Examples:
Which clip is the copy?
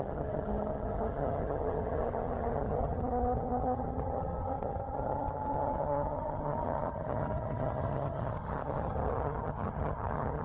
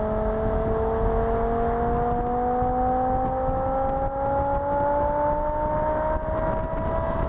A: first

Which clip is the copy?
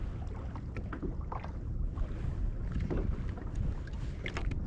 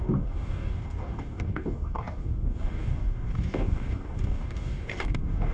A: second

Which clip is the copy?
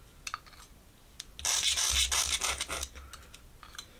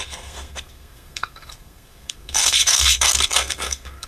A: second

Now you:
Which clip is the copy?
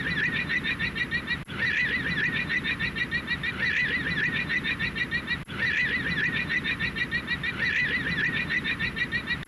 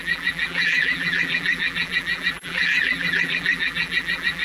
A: second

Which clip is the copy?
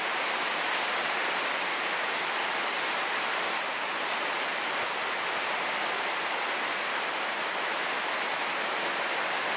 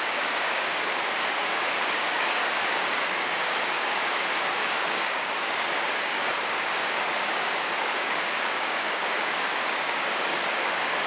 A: second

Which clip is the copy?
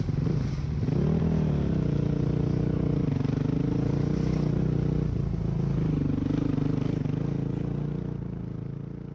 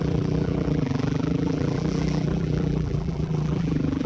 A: second